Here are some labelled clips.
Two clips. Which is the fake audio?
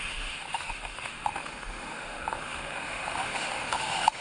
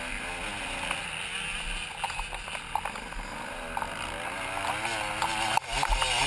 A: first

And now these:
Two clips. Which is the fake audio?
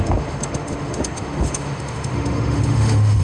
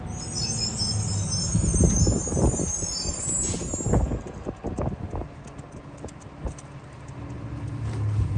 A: first